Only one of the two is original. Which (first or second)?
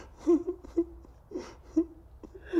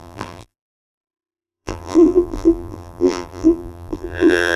first